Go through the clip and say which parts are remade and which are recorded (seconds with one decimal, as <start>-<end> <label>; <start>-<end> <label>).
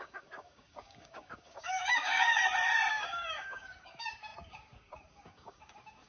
0.0-2.4 remade; 2.4-2.9 recorded; 2.9-6.1 remade